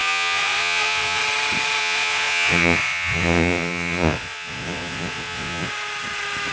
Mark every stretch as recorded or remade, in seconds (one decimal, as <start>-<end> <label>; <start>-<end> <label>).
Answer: 0.0-1.2 remade; 1.2-1.8 recorded; 1.8-5.7 remade; 5.7-6.5 recorded